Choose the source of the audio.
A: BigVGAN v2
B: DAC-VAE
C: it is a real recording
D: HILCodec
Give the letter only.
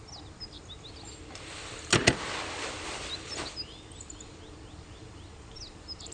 C